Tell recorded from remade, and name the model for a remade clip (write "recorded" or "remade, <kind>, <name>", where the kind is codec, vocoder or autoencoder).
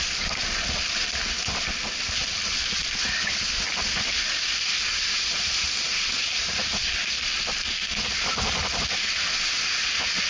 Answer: recorded